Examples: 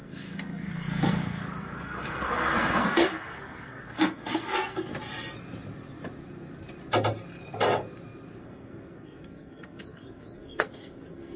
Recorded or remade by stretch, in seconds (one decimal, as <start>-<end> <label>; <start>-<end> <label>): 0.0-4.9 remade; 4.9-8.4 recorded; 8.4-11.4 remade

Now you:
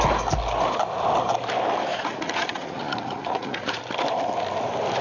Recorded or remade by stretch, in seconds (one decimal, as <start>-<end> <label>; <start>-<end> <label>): 0.0-1.9 recorded; 1.9-3.8 remade; 3.8-5.0 recorded

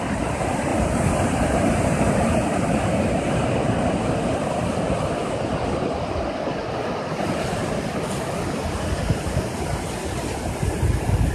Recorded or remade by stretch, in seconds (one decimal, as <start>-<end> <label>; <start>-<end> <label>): 0.0-11.3 recorded

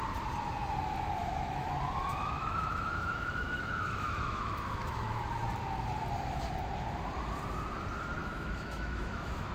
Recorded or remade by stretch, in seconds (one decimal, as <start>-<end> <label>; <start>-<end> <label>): 0.0-1.2 recorded; 1.2-1.8 remade; 1.8-2.2 recorded; 2.2-5.2 remade; 5.2-8.2 recorded; 8.2-9.5 remade

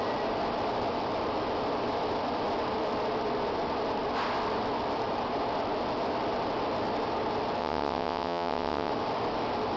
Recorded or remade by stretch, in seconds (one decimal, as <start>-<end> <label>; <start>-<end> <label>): 0.0-7.6 recorded; 7.6-8.9 remade; 8.9-9.8 recorded